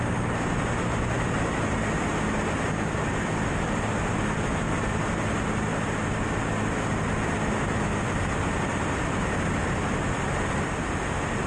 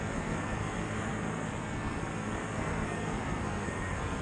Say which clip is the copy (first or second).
second